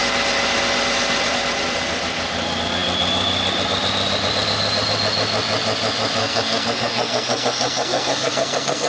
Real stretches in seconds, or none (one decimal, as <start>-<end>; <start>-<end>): 0.0-6.2